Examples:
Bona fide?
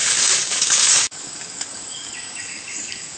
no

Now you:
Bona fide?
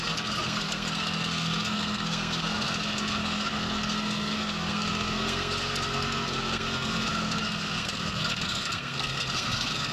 no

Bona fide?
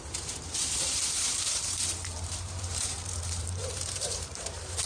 no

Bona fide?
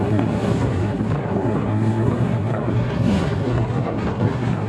no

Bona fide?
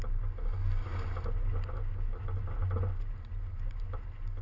yes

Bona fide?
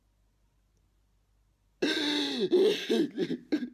yes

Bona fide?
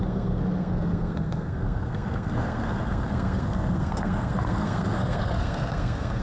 no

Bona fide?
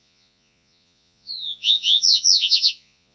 no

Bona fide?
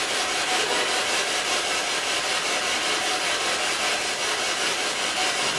yes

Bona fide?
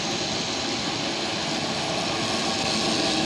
yes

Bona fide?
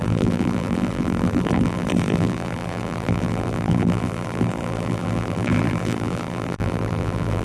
no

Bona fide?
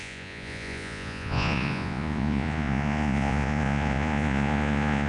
no